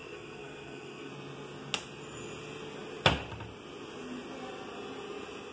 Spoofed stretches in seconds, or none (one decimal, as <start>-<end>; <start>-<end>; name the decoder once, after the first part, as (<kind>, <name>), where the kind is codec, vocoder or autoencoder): 0.0-1.1 (codec, SNAC)